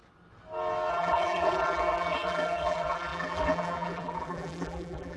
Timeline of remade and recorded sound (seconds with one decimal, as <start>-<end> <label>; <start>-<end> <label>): 0.0-0.9 recorded; 0.9-5.2 remade